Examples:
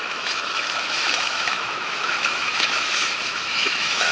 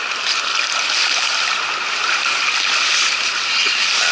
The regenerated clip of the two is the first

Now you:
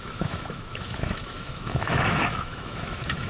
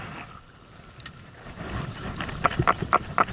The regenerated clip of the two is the first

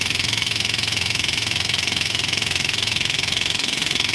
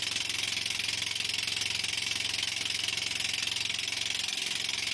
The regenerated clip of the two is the first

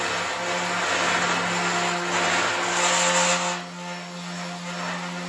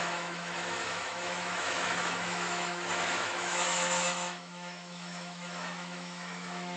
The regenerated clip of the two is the second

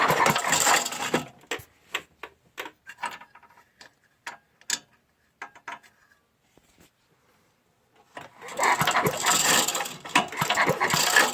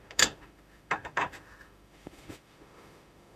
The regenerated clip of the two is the second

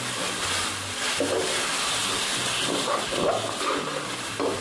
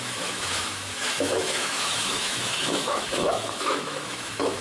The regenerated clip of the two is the second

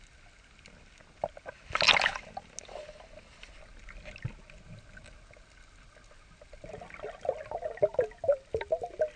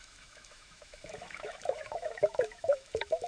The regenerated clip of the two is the second